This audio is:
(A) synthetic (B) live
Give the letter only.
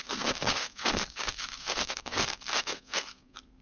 A